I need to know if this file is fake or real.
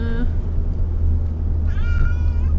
real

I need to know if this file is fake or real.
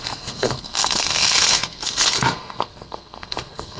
fake